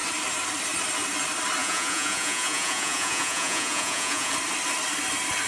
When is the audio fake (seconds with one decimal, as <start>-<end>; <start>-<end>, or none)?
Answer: 1.6-4.3